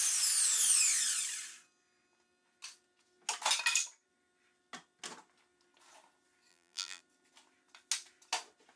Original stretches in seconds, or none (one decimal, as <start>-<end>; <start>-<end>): 0.0-6.5; 7.0-8.8